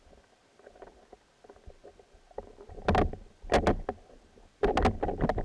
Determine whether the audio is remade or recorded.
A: recorded